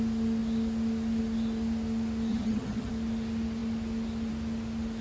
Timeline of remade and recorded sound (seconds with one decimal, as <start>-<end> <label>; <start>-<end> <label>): 0.0-2.3 recorded; 2.3-2.9 remade; 2.9-5.0 recorded